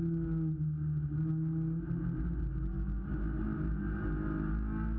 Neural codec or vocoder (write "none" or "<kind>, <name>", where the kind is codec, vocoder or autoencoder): none